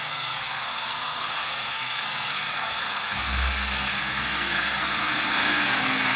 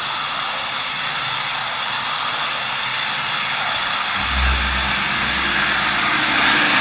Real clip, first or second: second